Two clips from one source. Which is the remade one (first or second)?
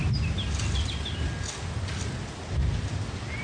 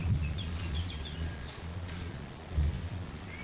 second